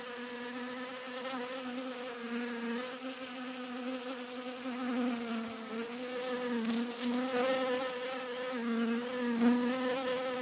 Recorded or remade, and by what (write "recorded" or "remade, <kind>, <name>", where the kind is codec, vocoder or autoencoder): recorded